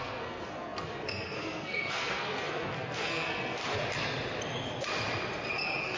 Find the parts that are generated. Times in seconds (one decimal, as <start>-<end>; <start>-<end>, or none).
0.0-3.6